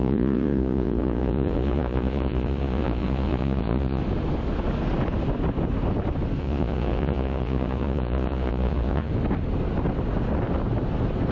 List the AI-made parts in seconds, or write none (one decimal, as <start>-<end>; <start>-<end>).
0.0-4.0; 6.4-9.1